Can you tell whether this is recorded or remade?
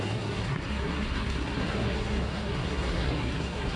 remade